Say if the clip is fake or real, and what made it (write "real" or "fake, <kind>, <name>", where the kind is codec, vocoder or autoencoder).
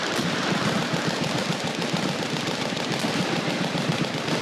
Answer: fake, vocoder, BigVGAN v2